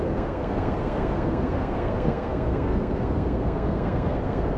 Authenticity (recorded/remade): remade